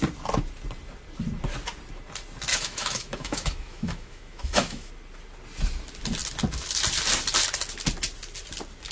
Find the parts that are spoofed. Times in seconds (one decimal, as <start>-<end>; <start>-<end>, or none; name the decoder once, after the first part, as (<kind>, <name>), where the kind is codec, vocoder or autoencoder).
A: 2.5-4.9 (autoencoder, DAC-VAE)